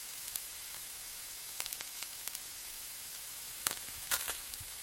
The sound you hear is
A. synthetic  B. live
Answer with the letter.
A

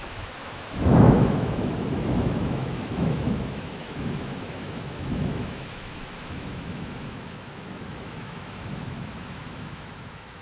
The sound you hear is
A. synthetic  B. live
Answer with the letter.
A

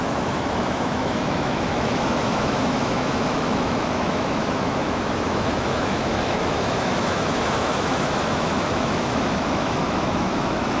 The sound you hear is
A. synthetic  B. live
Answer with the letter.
A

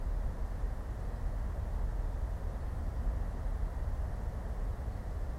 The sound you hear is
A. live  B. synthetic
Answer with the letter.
A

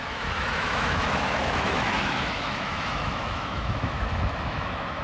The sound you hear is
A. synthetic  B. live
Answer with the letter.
A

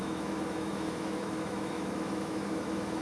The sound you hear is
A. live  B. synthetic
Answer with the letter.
B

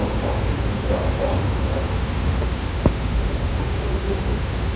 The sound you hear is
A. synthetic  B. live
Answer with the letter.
A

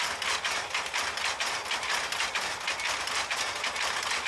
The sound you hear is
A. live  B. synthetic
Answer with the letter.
A